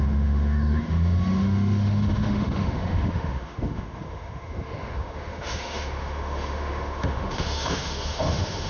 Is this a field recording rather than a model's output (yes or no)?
no